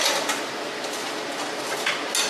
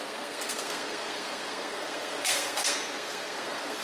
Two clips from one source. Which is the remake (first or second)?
second